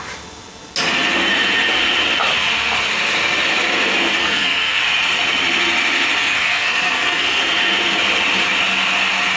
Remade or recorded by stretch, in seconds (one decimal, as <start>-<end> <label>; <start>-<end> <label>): 0.0-4.2 recorded; 4.2-4.8 remade; 4.8-6.2 recorded; 6.2-7.4 remade; 7.4-9.4 recorded